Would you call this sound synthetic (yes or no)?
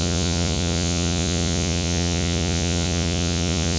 yes